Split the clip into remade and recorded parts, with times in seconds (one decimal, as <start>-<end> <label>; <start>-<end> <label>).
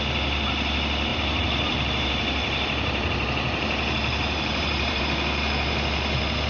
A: 0.0-1.1 recorded; 1.1-5.0 remade; 5.0-6.5 recorded